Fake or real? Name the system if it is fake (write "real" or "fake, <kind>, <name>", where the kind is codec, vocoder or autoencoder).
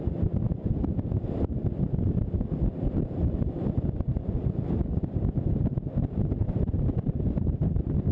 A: real